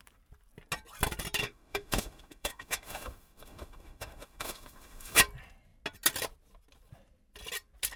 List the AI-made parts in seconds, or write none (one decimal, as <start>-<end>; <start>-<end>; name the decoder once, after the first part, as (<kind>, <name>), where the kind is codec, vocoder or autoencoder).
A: 1.4-5.2 (autoencoder, DAC-VAE)